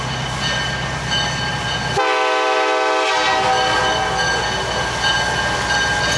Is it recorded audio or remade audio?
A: recorded